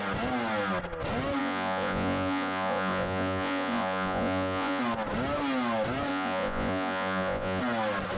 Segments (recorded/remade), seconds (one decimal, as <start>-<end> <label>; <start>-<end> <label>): 0.0-1.4 recorded; 1.4-4.8 remade; 4.8-6.1 recorded; 6.1-7.6 remade; 7.6-8.2 recorded